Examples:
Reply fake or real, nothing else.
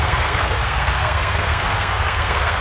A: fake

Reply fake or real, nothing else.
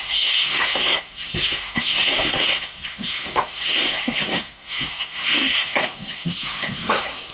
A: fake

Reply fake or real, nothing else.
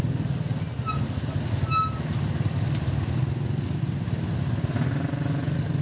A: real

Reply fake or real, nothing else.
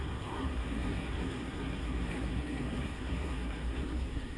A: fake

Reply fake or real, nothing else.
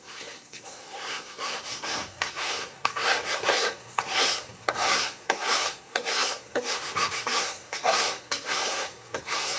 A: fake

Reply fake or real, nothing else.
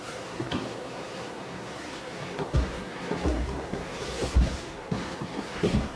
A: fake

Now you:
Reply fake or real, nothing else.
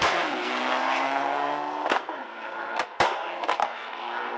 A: fake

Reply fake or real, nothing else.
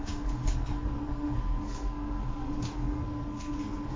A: fake